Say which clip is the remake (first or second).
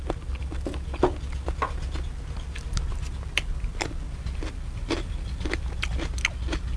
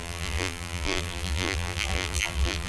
second